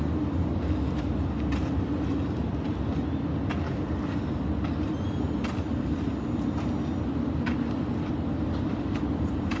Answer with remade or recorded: recorded